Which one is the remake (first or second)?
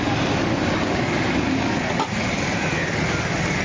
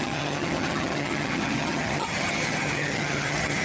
second